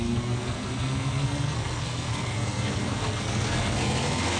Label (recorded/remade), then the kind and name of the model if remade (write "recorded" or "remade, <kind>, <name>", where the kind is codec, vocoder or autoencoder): remade, codec, SNAC